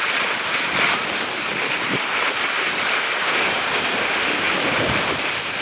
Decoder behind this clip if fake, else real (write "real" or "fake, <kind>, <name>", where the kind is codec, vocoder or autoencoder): real